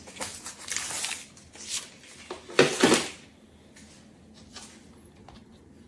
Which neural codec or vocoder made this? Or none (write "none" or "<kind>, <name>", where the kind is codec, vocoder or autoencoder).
none